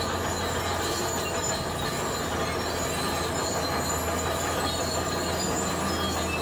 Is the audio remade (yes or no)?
no